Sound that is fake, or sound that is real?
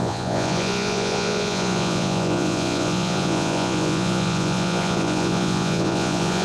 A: fake